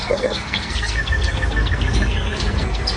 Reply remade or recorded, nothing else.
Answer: remade